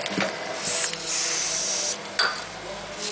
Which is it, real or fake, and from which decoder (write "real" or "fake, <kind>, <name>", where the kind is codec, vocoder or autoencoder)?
real